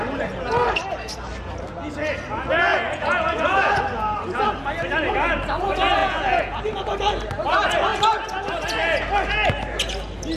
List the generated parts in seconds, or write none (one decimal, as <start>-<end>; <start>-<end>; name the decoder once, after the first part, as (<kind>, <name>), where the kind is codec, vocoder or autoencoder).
2.7-3.7 (vocoder, Vocos); 6.0-6.6